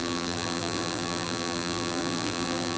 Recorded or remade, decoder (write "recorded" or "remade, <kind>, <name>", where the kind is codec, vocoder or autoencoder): remade, vocoder, BigVGAN v2